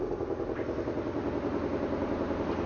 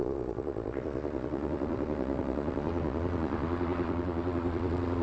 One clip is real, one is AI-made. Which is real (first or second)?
first